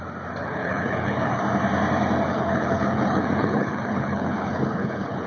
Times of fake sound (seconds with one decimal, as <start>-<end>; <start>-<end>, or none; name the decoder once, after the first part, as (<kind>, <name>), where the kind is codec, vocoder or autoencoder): 0.4-1.4 (codec, HILCodec); 2.3-5.3

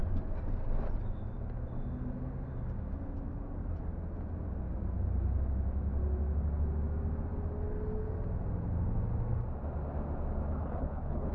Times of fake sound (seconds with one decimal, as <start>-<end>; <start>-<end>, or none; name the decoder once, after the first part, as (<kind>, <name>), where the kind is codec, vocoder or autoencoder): 10.5-11.3 (codec, HILCodec)

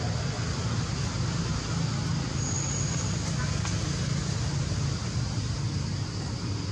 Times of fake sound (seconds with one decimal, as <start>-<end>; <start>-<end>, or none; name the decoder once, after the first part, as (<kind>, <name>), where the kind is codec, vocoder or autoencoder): none

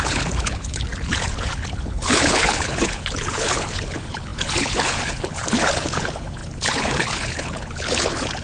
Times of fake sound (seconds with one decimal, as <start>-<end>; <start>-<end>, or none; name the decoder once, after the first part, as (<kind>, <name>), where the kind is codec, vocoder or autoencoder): 0.0-8.4 (codec, HILCodec)

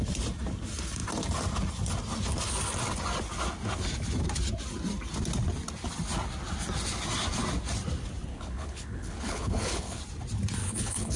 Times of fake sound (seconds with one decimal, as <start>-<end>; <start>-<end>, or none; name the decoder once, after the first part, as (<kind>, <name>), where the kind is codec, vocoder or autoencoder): 8.3-10.0 (codec, HILCodec); 10.6-11.2

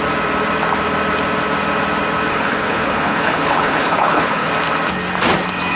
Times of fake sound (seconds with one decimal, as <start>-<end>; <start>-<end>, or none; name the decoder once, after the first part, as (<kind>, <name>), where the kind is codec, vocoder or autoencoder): 2.3-4.5 (codec, HILCodec)

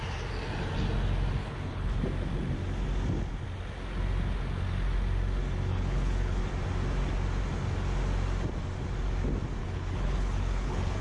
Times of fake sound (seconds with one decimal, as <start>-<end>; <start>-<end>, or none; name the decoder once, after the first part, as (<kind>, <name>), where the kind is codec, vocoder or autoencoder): 1.4-2.0 (codec, HILCodec); 5.7-6.4; 9.6-11.0